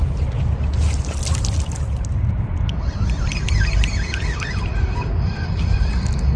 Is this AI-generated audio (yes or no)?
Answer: no